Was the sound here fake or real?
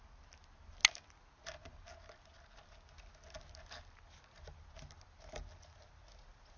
real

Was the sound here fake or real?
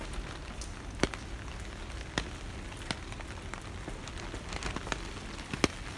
real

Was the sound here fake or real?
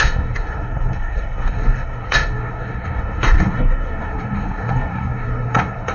fake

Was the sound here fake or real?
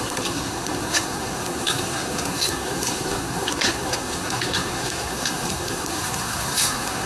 fake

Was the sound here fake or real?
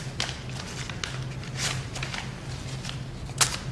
real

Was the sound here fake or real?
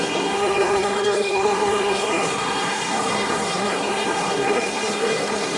fake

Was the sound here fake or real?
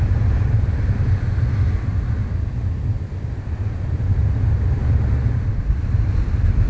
real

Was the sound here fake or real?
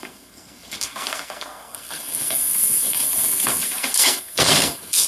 fake